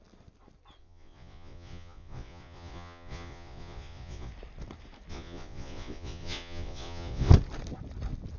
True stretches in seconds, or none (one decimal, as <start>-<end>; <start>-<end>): 0.0-0.8; 4.3-5.1; 7.3-8.4